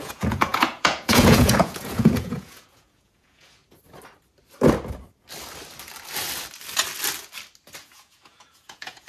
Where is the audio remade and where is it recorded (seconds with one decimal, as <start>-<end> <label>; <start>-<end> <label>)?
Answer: 0.0-3.6 remade; 3.6-7.8 recorded; 7.8-9.1 remade